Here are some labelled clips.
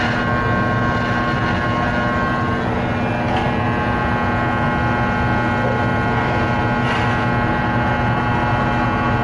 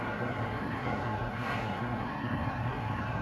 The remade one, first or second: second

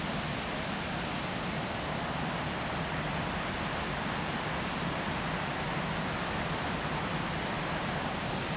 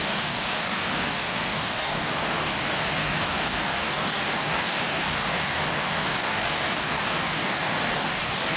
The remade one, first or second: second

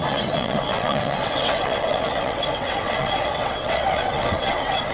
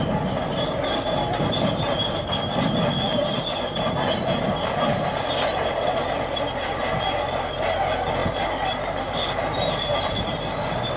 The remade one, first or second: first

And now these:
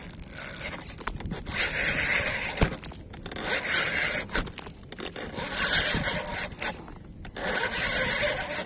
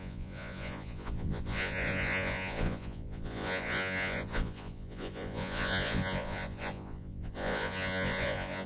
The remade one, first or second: second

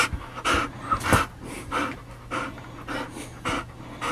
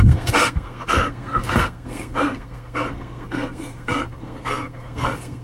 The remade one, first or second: second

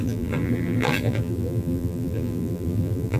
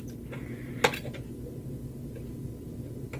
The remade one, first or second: first